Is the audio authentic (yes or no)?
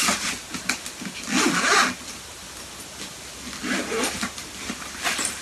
yes